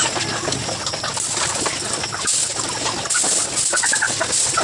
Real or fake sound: real